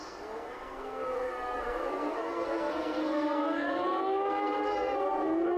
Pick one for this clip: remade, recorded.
remade